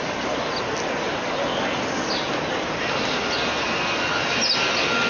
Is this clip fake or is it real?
real